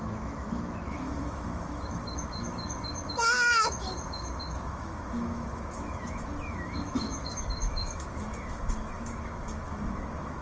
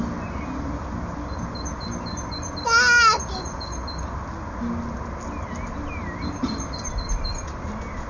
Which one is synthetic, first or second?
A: first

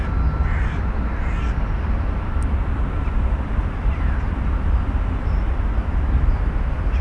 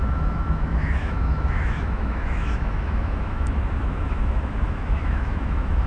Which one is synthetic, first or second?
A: second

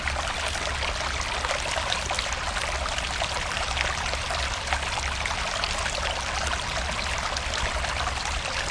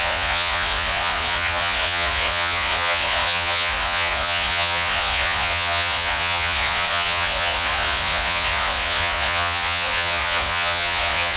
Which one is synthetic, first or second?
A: second